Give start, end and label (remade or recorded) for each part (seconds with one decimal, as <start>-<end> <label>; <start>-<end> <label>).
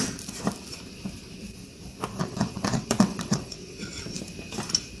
0.0-2.2 recorded; 2.2-4.2 remade; 4.2-5.0 recorded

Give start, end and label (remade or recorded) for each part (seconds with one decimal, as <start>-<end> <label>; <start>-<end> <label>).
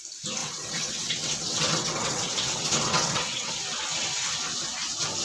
0.0-0.4 recorded; 0.4-3.5 remade; 3.5-5.2 recorded